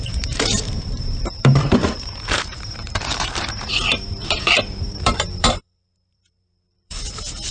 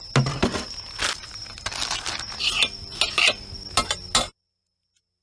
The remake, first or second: first